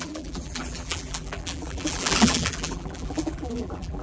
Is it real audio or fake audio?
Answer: fake